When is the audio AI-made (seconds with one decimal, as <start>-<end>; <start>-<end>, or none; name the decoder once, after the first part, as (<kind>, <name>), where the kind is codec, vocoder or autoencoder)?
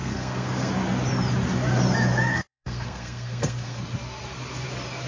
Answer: 0.0-0.7 (codec, SNAC); 2.3-3.8